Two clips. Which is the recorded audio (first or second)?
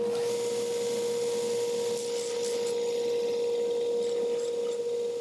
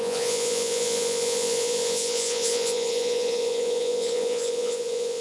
first